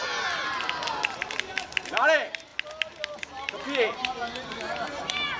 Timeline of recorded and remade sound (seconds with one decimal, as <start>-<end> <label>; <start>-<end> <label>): 0.0-5.4 recorded